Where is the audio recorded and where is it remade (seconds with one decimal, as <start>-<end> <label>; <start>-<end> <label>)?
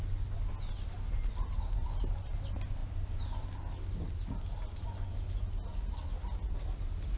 0.0-7.2 recorded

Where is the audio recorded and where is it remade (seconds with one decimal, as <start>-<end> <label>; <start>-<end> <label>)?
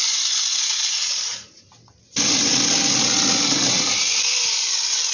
0.0-5.1 recorded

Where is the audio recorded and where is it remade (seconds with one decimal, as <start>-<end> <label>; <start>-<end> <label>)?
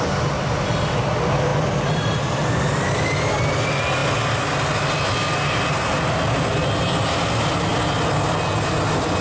0.0-9.2 recorded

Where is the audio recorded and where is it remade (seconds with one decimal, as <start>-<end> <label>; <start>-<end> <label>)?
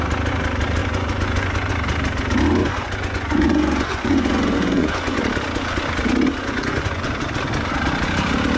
0.0-0.8 recorded; 0.8-1.7 remade; 1.7-2.6 recorded; 2.6-5.2 remade; 5.2-6.4 recorded; 6.4-7.0 remade; 7.0-8.6 recorded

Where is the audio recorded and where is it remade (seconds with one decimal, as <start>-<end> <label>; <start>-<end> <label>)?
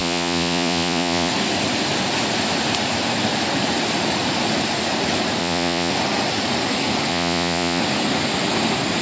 0.0-1.3 remade; 1.3-5.4 recorded; 5.4-5.9 remade; 5.9-7.1 recorded; 7.1-7.8 remade; 7.8-9.0 recorded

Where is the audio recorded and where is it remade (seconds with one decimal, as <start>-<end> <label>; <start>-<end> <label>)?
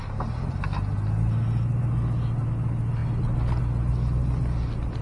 0.0-5.0 recorded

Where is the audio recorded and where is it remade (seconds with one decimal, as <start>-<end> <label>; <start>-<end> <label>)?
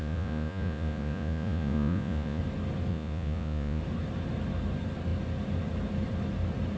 0.0-2.4 remade; 2.4-2.9 recorded; 2.9-3.8 remade; 3.8-6.8 recorded